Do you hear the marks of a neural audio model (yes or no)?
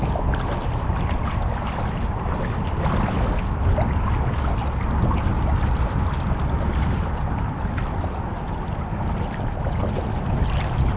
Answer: no